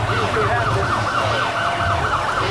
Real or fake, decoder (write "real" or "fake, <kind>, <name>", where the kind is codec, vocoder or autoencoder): real